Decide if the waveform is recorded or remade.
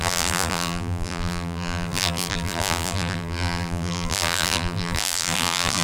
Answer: remade